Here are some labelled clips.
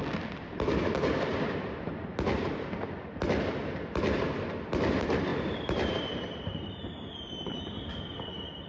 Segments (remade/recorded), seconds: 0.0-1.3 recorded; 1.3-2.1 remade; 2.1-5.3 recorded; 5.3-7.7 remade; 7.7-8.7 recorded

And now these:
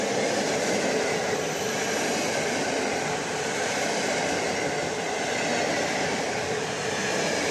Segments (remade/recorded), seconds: 0.0-2.6 recorded; 2.6-4.1 remade; 4.1-7.5 recorded

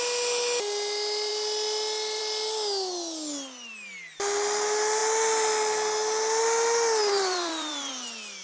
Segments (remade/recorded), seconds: 0.0-7.0 recorded; 7.0-7.9 remade; 7.9-8.4 recorded

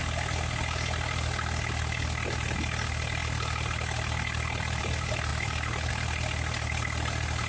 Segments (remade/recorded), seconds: 0.0-5.3 recorded; 5.3-5.9 remade; 5.9-7.5 recorded

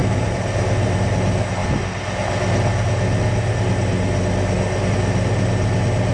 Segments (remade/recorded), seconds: 0.0-1.1 remade; 1.1-6.1 recorded

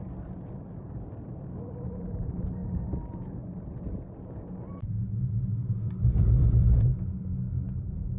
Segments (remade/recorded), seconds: 0.0-2.6 remade; 2.6-5.8 recorded; 5.8-7.2 remade; 7.2-8.2 recorded

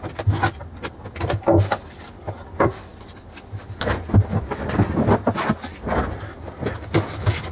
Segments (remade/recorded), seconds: 0.0-2.2 recorded; 2.2-6.1 remade; 6.1-7.5 recorded